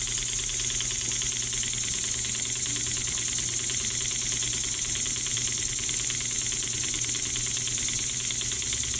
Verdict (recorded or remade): recorded